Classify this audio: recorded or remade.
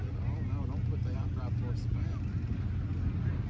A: recorded